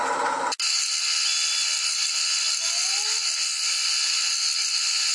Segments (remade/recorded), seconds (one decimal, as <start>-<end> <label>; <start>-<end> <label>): 0.0-5.1 recorded